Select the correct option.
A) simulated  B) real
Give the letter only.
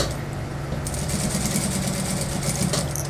B